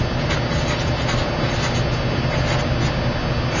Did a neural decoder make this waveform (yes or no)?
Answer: no